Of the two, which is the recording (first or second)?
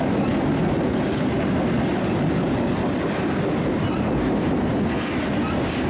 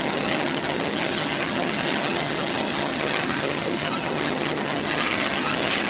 first